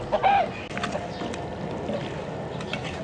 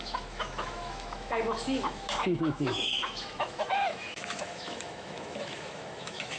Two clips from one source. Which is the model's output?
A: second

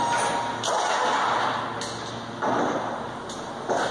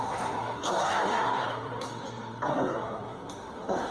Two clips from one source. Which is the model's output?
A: second